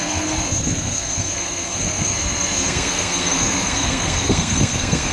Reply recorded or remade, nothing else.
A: remade